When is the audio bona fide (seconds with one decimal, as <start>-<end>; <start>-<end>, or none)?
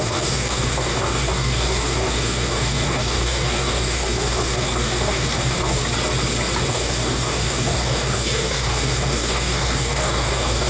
5.8-6.6